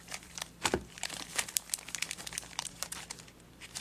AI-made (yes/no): yes